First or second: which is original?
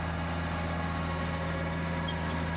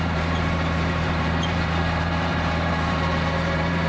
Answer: first